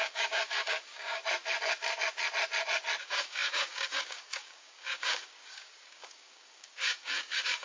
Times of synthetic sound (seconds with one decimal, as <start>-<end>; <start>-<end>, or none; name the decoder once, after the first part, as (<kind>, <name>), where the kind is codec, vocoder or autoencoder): 0.0-1.2 (codec, DAC); 3.0-7.6

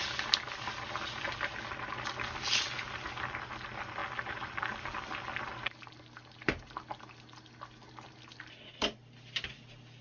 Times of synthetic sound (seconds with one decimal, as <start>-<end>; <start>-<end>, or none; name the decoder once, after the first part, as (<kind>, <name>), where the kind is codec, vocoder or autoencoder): none

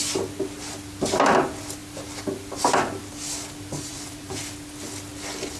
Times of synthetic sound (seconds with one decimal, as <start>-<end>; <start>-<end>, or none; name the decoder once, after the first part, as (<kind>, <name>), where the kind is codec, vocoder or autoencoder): 3.9-4.4 (vocoder, BigVGAN v2)

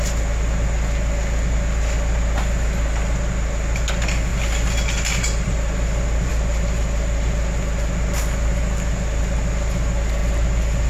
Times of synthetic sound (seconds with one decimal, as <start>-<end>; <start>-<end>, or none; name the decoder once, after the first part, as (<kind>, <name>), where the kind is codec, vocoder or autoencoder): 4.3-6.3 (vocoder, BigVGAN v2); 10.2-10.9

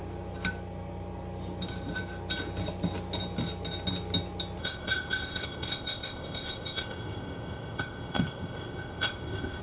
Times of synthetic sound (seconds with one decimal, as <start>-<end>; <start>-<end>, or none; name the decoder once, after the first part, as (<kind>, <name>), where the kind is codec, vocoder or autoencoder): 4.6-9.6 (codec, ZipCodec)

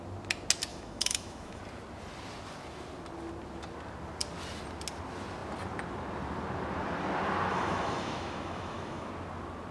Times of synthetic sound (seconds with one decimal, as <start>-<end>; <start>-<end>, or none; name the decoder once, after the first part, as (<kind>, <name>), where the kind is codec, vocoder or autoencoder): 0.7-1.6 (autoencoder, DAC-VAE); 7.5-9.1

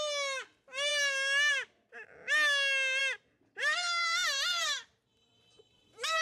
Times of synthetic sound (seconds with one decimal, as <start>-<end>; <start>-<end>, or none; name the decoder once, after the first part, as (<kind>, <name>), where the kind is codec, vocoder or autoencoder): 3.6-6.2 (vocoder, BigVGAN v2)